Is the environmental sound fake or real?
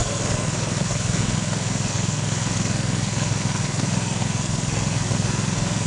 fake